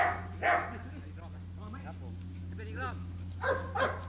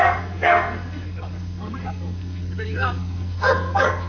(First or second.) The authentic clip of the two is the first